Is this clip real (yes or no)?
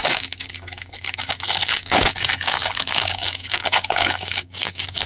no